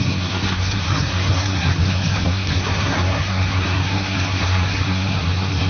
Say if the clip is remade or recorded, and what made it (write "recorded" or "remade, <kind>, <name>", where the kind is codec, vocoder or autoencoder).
remade, codec, SNAC